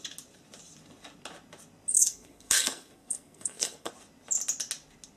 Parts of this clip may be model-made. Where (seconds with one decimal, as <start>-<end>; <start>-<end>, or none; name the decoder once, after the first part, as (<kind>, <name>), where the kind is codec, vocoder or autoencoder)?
1.9-3.9 (codec, SNAC)